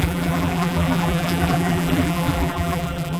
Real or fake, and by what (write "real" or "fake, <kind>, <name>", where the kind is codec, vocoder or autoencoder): fake, vocoder, BigVGAN v2